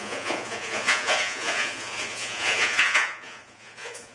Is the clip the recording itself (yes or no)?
no